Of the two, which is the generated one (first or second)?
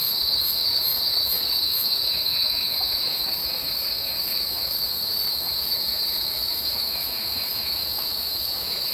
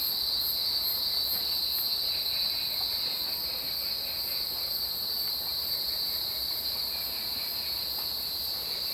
first